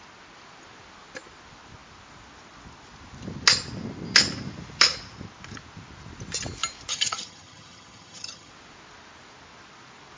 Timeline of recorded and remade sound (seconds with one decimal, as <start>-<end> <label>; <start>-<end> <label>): 0.0-6.9 recorded; 6.9-8.5 remade; 8.5-10.2 recorded